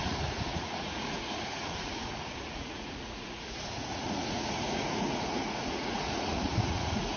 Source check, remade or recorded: remade